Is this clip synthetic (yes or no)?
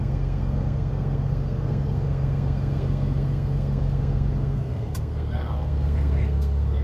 yes